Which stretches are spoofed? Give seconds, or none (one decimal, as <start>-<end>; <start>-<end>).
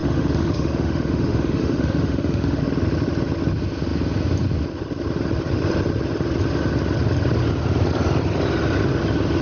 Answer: 0.0-2.6